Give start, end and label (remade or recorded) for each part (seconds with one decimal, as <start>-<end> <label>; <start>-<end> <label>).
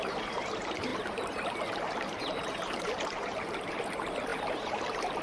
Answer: 0.0-5.2 remade